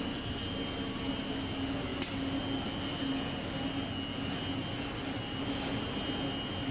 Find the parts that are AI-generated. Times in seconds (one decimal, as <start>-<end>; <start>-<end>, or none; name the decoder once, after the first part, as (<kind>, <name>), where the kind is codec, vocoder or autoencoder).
none